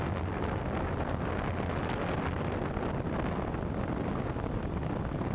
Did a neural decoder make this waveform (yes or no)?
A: no